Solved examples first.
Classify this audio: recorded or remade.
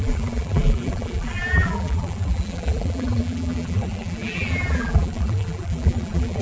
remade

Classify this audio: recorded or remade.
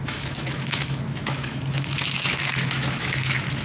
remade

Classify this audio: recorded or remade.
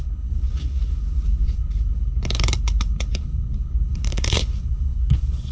remade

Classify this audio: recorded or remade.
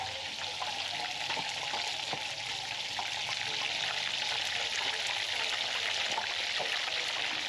recorded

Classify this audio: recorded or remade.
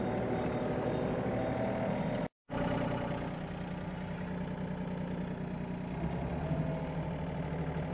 recorded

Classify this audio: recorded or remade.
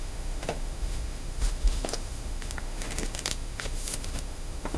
remade